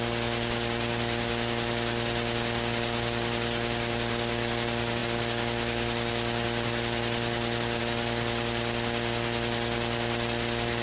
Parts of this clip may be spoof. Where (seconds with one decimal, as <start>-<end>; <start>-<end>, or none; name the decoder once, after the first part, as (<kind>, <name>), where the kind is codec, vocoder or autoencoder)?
none